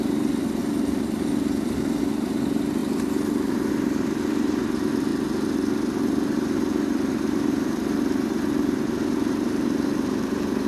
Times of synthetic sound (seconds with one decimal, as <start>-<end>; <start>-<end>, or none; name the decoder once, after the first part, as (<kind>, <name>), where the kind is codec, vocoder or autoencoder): 0.0-5.1 (vocoder, BigVGAN v2); 6.0-10.7